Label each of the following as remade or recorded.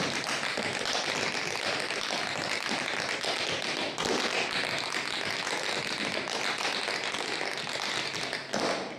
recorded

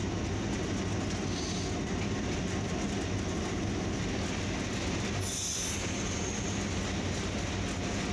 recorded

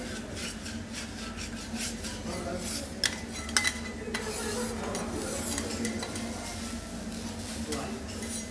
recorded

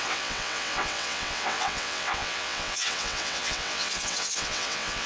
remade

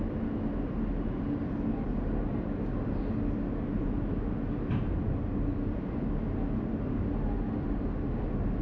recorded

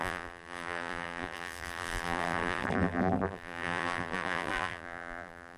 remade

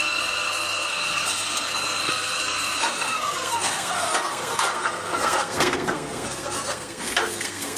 remade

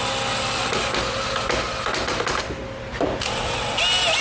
recorded